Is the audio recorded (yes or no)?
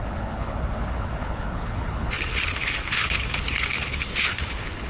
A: no